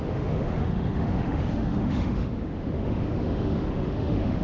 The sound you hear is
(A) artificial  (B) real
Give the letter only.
A